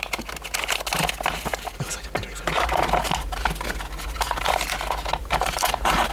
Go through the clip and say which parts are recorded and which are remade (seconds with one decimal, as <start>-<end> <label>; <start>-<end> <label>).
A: 0.0-5.2 recorded; 5.2-6.1 remade